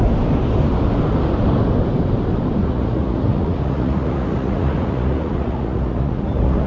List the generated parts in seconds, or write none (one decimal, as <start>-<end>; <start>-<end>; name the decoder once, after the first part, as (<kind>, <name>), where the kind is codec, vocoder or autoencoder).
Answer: 2.6-6.7 (vocoder, Vocos)